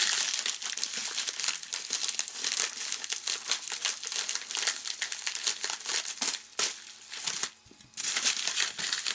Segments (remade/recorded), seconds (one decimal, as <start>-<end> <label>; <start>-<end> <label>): 0.0-9.1 recorded